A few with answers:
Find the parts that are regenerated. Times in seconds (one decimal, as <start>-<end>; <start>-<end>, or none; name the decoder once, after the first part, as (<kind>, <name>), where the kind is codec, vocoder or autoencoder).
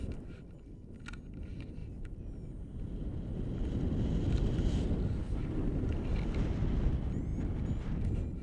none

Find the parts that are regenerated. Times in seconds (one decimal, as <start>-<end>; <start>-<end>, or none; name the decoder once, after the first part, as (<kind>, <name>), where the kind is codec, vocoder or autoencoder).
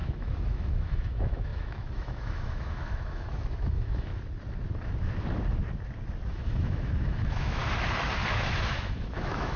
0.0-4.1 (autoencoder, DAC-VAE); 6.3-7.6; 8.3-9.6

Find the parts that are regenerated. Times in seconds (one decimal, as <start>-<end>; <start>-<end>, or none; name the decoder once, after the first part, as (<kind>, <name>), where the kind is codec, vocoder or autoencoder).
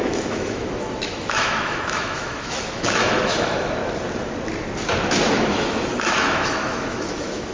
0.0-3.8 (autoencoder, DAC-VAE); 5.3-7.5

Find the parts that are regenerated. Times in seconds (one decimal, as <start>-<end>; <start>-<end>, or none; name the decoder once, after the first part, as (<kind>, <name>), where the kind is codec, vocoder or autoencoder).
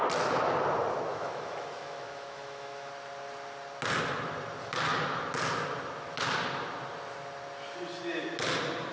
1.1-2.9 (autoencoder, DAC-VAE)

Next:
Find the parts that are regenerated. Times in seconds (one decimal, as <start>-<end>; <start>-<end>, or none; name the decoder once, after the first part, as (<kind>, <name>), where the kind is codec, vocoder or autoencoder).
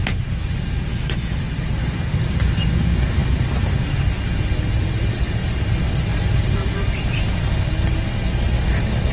0.9-1.4 (autoencoder, DAC-VAE)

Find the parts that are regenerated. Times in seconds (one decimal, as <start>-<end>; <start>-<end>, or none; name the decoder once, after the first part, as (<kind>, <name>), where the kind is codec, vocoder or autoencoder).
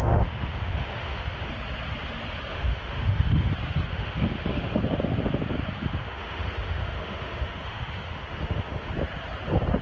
0.0-1.5 (autoencoder, DAC-VAE); 2.5-3.5; 3.9-4.8; 6.0-8.9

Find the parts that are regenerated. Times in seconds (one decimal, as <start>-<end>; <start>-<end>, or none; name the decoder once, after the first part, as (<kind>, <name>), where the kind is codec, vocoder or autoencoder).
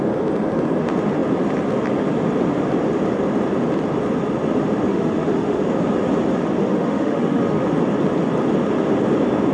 4.9-5.6 (autoencoder, DAC-VAE); 6.6-7.6